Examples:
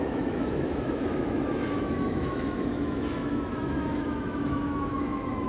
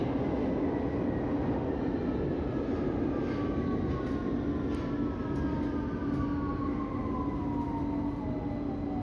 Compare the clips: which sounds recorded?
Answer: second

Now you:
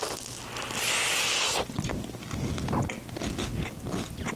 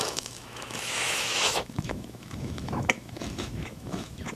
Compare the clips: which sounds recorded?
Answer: first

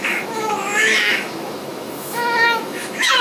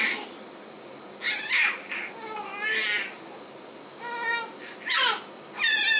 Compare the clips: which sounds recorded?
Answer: second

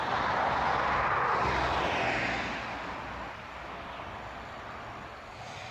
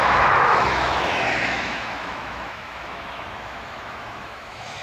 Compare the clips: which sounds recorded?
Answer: first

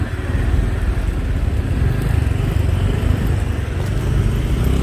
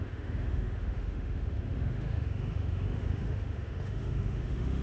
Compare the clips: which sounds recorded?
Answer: first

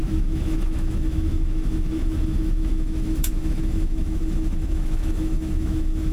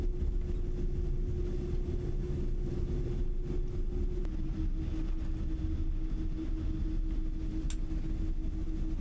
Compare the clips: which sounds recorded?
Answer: second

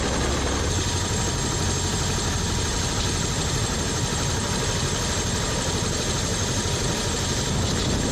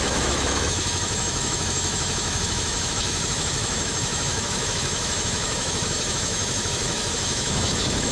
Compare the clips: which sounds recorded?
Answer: first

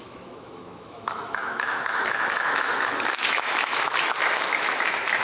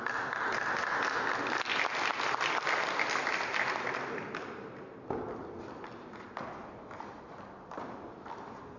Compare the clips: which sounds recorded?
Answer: second